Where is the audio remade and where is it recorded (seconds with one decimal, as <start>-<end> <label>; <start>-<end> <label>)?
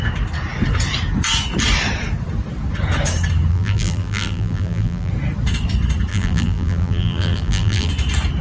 0.0-3.5 recorded; 3.5-5.1 remade; 5.1-6.1 recorded; 6.1-7.9 remade; 7.9-8.4 recorded